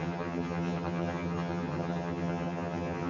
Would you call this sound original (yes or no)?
no